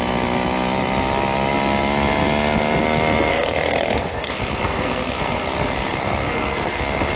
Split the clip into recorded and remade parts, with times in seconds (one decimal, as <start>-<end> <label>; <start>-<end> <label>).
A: 0.0-3.3 recorded; 3.3-6.8 remade; 6.8-7.2 recorded